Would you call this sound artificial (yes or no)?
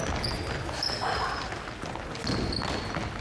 no